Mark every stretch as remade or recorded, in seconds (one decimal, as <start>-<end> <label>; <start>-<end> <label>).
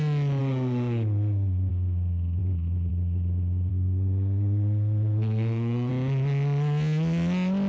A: 0.0-0.4 recorded; 0.4-1.7 remade; 1.7-3.7 recorded; 3.7-5.9 remade; 5.9-7.7 recorded